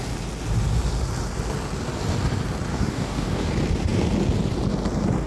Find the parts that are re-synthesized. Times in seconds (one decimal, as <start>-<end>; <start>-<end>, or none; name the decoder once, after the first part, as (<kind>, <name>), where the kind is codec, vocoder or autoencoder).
2.7-3.5 (codec, DAC)